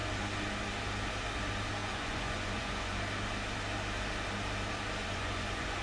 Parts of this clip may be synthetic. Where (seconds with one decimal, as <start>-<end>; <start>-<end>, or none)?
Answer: 1.8-3.0; 5.0-5.8